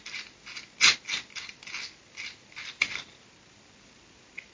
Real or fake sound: real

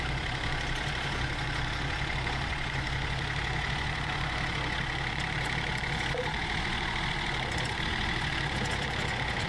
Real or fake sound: fake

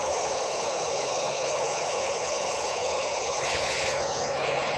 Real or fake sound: fake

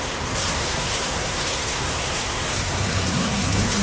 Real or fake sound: fake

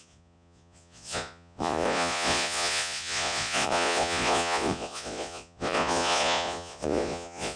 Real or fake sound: fake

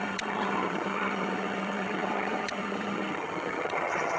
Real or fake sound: fake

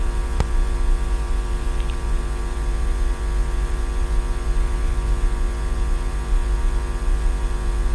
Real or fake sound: fake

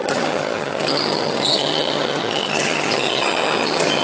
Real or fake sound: fake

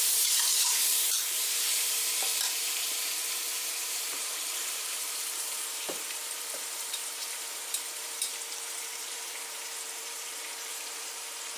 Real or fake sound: fake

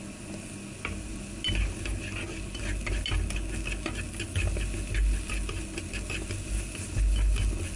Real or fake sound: real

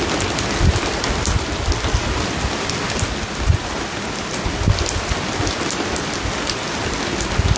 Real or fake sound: real